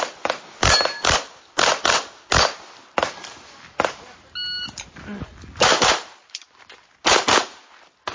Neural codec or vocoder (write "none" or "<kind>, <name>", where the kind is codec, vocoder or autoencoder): none